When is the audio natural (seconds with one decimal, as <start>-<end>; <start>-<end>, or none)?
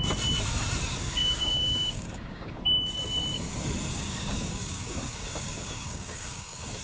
0.0-1.2; 2.6-3.9